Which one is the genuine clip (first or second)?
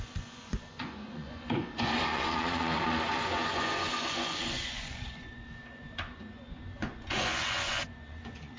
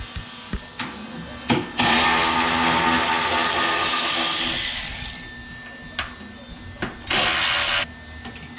second